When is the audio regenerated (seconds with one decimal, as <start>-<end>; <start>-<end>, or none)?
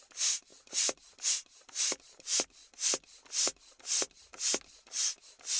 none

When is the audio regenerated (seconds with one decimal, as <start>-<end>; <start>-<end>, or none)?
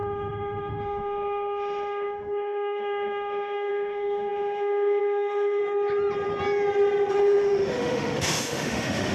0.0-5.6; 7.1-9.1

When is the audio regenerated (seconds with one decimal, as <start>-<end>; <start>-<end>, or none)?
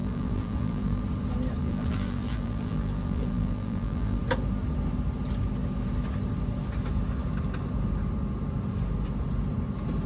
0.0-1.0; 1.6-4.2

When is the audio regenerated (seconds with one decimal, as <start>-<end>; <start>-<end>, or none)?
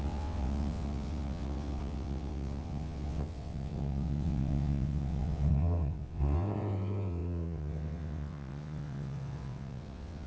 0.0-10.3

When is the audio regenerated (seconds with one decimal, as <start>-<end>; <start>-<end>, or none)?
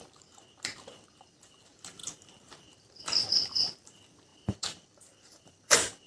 0.0-6.1